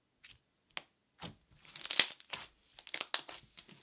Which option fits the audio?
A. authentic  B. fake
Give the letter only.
A